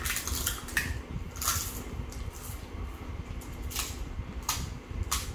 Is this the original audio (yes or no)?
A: yes